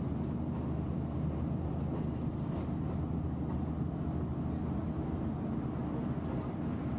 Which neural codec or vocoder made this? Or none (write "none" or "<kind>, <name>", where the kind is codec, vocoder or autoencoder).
none